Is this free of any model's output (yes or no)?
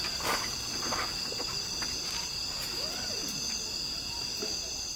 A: no